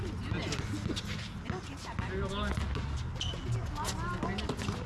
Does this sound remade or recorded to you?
recorded